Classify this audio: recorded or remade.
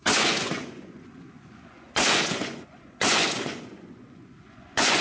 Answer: remade